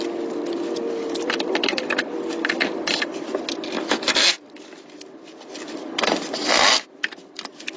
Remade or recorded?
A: recorded